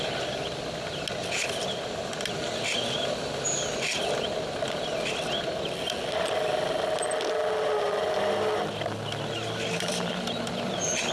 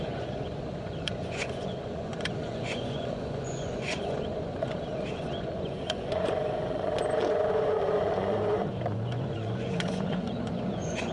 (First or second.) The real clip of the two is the first